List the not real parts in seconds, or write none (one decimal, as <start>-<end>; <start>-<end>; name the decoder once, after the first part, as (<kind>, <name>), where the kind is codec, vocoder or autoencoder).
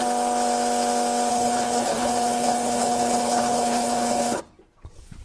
1.3-4.4 (codec, HILCodec)